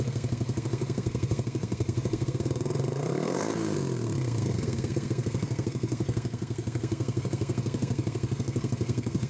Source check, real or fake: fake